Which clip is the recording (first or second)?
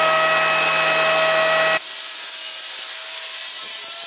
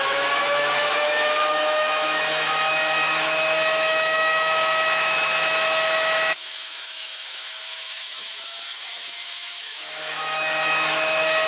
first